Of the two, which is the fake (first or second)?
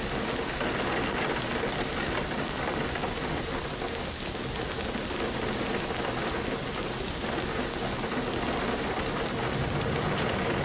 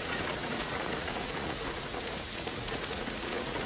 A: second